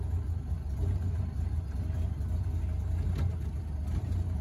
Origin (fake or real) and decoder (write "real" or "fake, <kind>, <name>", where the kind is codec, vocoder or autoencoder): real